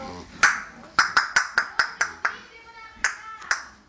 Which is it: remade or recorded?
recorded